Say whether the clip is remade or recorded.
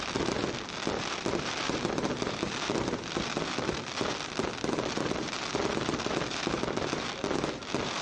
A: remade